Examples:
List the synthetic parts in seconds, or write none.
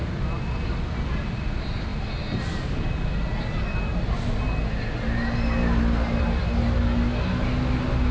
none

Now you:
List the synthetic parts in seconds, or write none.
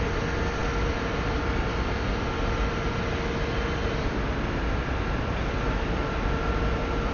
none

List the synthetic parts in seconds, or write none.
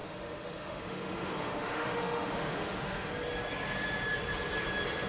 0.0-3.1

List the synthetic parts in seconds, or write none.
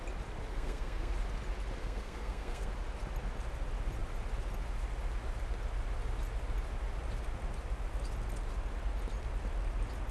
0.5-1.1; 1.8-2.7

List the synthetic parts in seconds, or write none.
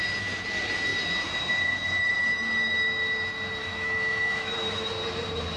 3.6-4.9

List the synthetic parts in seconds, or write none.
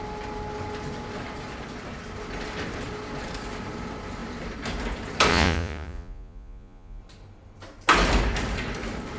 5.3-7.0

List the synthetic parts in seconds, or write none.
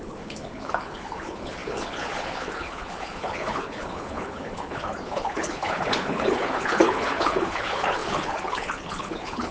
0.0-9.5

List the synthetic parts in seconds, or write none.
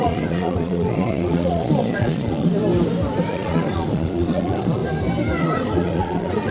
0.0-2.5; 3.3-4.8; 5.4-6.5